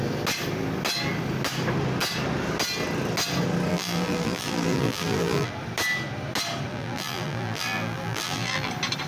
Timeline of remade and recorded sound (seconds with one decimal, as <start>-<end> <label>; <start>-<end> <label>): 0.0-3.7 recorded; 3.7-5.5 remade; 5.5-6.7 recorded; 6.7-8.7 remade; 8.7-9.1 recorded